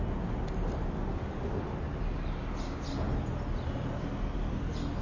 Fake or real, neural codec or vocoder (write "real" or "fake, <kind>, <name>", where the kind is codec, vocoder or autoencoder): real